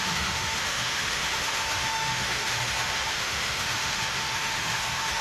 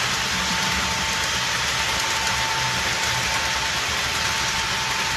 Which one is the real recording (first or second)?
second